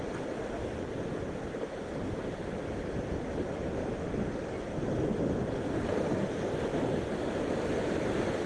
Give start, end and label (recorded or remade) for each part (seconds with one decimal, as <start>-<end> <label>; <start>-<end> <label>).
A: 0.0-8.5 recorded